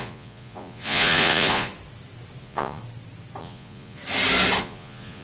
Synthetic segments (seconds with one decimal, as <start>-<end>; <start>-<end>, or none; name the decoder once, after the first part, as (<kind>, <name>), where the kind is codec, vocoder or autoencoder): 0.0-1.7 (vocoder, Vocos); 2.4-2.8; 3.4-4.0; 4.6-5.2